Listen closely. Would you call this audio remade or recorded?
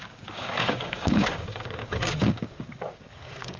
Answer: remade